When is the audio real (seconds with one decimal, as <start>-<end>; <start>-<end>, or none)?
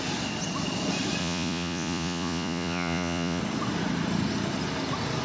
0.0-1.2; 3.4-5.2